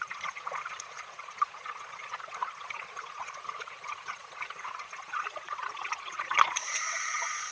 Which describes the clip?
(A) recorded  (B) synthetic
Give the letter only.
B